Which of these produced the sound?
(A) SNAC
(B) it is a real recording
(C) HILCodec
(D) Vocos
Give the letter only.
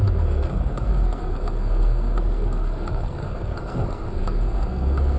A